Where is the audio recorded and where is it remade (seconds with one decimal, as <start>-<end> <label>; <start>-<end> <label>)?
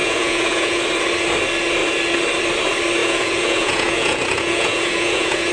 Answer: 0.0-0.8 remade; 0.8-3.0 recorded; 3.0-5.5 remade